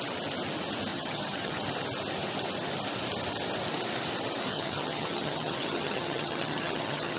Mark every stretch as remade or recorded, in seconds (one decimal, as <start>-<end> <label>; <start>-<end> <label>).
0.0-0.9 recorded; 0.9-1.6 remade; 1.6-4.5 recorded; 4.5-7.2 remade

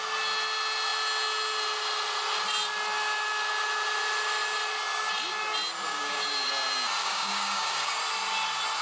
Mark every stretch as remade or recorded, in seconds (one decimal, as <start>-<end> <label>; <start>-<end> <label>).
0.0-5.9 recorded; 5.9-6.5 remade; 6.5-7.0 recorded; 7.0-8.0 remade; 8.0-8.8 recorded

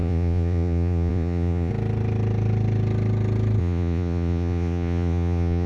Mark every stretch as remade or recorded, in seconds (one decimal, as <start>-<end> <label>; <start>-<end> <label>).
0.0-1.7 remade; 1.7-3.6 recorded; 3.6-5.7 remade

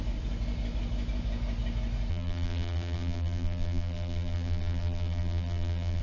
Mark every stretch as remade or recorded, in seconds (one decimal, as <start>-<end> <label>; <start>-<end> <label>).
0.0-2.1 recorded; 2.1-6.0 remade

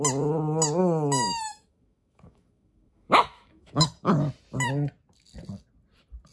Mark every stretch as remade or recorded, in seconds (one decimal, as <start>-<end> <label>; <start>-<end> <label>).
0.0-0.8 recorded; 0.8-4.1 remade; 4.1-6.3 recorded

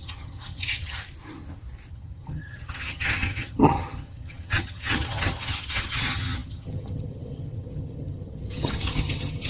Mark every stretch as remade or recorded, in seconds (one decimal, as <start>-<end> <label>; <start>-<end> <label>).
0.0-1.0 remade; 1.0-1.9 recorded; 1.9-9.5 remade

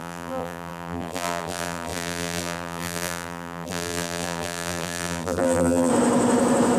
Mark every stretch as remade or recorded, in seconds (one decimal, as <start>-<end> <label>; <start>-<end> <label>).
0.0-5.9 remade; 5.9-6.8 recorded

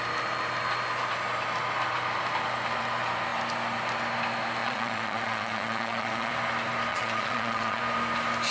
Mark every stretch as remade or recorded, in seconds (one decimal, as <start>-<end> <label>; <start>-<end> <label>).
0.0-4.6 recorded; 4.6-6.3 remade; 6.3-6.9 recorded; 6.9-7.8 remade; 7.8-8.5 recorded